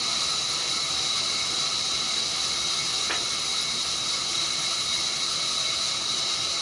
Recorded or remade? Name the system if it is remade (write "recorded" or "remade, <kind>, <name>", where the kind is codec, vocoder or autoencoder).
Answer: recorded